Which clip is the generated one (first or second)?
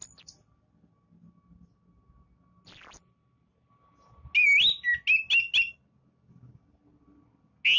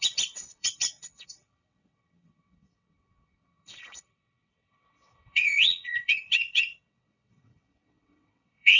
second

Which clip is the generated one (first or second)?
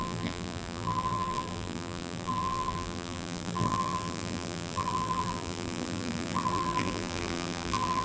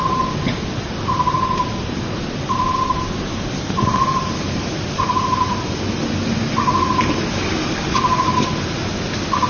first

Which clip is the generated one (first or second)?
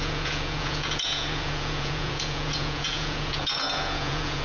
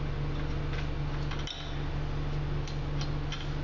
first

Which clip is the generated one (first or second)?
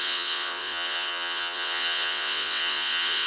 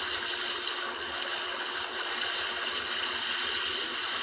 first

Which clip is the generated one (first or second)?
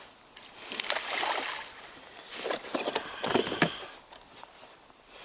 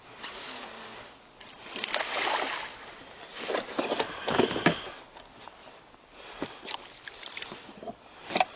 first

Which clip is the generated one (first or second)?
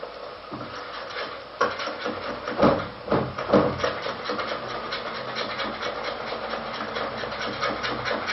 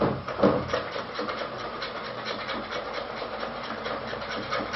second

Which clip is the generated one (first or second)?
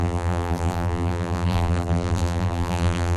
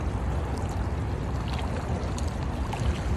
first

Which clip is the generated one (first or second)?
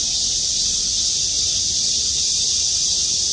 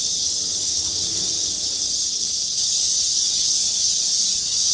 second